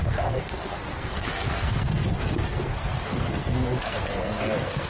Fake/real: fake